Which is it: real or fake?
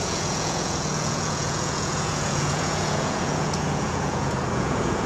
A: fake